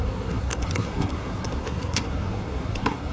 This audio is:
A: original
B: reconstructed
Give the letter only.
B